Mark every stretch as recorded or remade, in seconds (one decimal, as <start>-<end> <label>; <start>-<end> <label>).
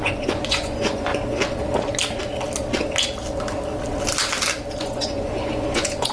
0.0-1.1 remade; 1.1-4.8 recorded; 4.8-6.1 remade